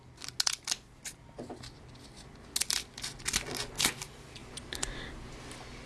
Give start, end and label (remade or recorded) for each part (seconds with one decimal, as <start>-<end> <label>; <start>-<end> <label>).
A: 0.0-5.9 recorded